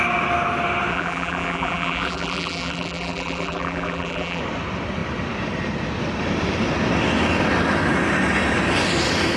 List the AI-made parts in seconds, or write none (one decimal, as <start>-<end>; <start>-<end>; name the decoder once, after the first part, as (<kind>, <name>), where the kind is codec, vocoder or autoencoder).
0.9-4.4 (vocoder, BigVGAN v2)